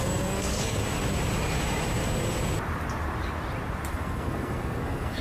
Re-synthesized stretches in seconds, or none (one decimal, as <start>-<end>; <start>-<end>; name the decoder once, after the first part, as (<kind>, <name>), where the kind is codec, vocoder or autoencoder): 0.0-0.8 (codec, SNAC); 3.9-5.2